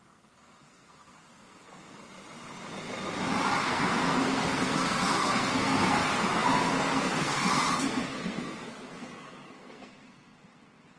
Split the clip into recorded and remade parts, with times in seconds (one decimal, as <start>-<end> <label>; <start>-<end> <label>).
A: 0.0-2.0 remade; 2.0-3.6 recorded; 3.6-11.0 remade